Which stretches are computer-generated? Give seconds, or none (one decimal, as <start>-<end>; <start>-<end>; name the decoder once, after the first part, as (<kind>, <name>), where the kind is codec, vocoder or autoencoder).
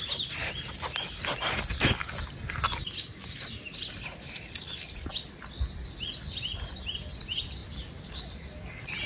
none